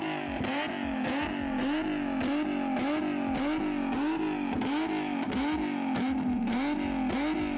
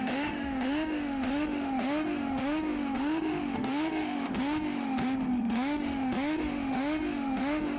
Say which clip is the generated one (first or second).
second